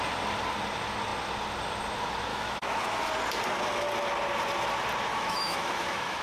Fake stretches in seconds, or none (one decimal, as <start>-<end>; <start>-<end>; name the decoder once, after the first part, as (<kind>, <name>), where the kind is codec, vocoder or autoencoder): 2.3-3.1 (autoencoder, DAC-VAE); 5.1-6.2